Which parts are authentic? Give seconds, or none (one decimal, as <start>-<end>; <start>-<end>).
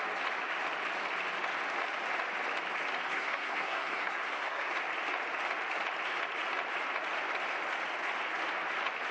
0.0-3.1; 4.7-9.1